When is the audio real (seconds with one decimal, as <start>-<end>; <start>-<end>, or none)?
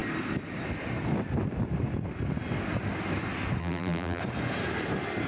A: 0.0-3.6; 4.2-5.3